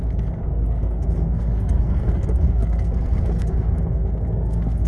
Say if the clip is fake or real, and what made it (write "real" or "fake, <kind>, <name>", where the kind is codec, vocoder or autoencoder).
fake, codec, SNAC